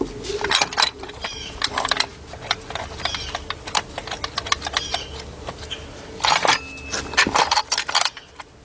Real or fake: real